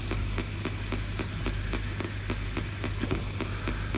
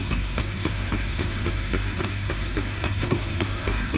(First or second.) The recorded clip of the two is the first